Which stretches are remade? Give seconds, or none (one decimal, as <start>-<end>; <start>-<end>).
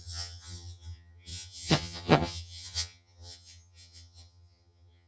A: 0.0-5.1